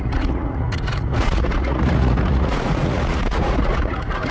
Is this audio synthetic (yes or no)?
yes